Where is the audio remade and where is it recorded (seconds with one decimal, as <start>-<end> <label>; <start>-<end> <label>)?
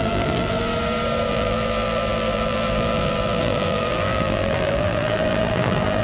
0.0-0.7 remade; 0.7-1.3 recorded; 1.3-6.0 remade